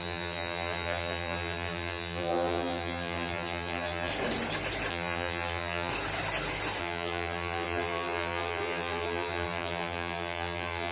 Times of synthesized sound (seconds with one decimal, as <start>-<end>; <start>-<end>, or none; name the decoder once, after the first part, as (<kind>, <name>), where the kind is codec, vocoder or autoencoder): 0.0-4.1 (vocoder, BigVGAN v2); 4.9-5.9; 6.8-10.9